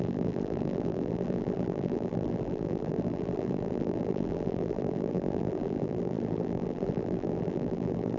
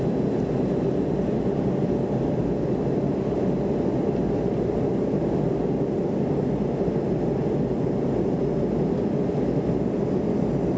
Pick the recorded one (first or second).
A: second